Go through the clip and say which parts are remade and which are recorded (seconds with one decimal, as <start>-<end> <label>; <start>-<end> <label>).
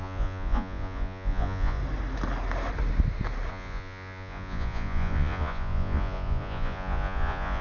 0.0-1.8 remade; 1.8-3.5 recorded; 3.5-7.6 remade